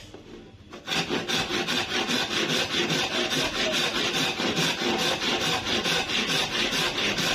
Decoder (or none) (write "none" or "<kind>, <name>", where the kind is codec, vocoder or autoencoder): none